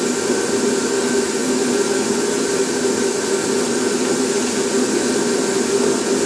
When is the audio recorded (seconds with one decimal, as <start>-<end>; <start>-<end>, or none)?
0.0-6.3